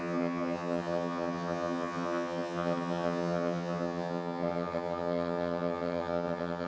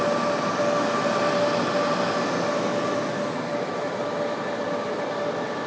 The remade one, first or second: first